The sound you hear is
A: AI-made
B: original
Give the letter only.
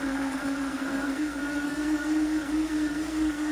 A